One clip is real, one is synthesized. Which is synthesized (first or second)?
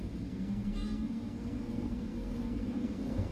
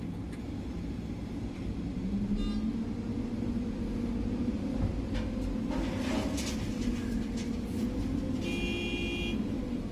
first